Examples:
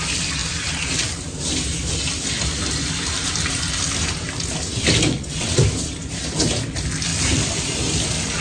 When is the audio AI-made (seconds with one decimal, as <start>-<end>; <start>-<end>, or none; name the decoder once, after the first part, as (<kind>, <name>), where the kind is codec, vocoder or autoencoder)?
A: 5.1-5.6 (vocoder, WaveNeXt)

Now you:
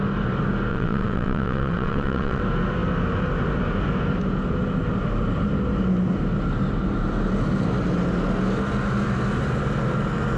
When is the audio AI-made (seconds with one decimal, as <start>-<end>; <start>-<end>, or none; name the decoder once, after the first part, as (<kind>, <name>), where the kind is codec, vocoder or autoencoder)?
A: 0.7-2.4 (vocoder, WaveNeXt)

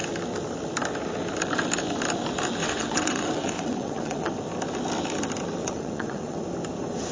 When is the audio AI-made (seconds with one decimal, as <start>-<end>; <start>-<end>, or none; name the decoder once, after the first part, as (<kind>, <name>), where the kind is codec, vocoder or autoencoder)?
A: 2.6-4.3 (vocoder, WaveNeXt); 5.6-6.4

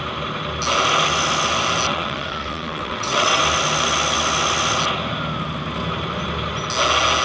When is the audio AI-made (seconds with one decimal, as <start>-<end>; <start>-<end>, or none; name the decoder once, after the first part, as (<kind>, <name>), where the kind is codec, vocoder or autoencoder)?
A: 1.9-3.4 (vocoder, WaveNeXt)

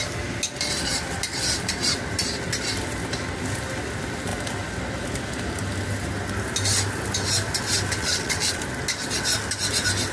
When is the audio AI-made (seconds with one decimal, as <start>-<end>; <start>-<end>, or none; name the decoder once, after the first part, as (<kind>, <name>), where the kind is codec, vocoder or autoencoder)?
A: 8.0-8.6 (vocoder, WaveNeXt)

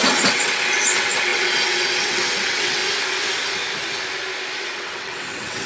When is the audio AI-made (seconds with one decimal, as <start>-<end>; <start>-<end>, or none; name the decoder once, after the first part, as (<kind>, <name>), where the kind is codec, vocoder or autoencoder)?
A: 0.0-2.8 (vocoder, WaveNeXt); 4.6-5.7

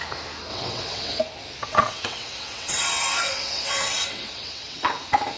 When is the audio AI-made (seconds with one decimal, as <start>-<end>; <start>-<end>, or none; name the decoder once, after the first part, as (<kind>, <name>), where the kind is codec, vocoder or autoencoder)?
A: 0.5-1.2 (vocoder, WaveNeXt); 1.7-4.9

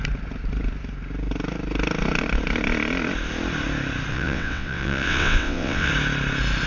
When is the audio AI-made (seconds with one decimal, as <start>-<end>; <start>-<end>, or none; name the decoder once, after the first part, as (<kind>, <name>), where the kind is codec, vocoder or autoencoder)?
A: 4.1-5.9 (vocoder, WaveNeXt)